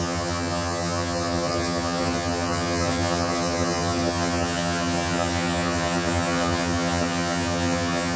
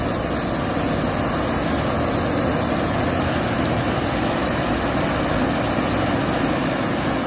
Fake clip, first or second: first